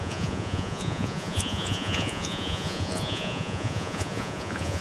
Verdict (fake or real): fake